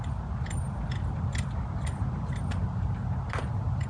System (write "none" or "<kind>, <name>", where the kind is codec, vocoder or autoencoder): none